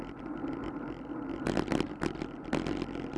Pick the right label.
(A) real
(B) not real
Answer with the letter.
A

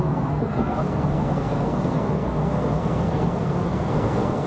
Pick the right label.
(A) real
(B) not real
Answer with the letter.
B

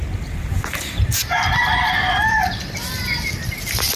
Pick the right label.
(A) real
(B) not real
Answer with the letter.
A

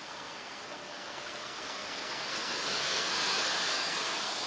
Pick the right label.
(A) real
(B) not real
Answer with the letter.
B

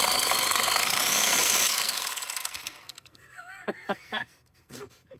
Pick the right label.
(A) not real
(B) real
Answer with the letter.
A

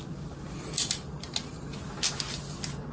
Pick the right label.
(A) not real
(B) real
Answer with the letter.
B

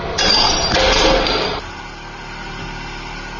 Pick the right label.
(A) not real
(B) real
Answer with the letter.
B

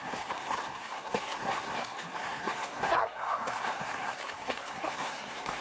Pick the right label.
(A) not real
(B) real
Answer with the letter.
A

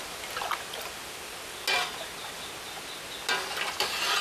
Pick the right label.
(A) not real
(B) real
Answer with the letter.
B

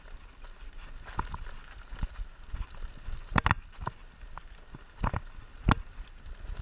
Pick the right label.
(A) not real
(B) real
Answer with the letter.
B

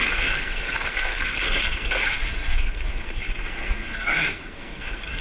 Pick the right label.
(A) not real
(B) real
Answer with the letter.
A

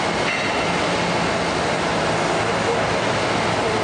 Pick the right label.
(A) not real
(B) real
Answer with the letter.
B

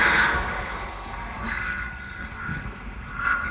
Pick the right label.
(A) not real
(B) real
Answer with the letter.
A